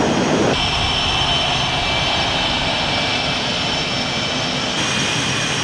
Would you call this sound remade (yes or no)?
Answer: no